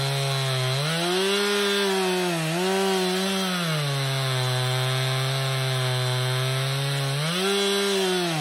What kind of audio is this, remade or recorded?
recorded